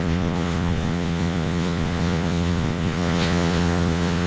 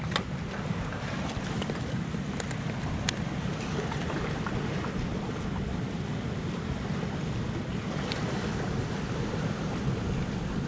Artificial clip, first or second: first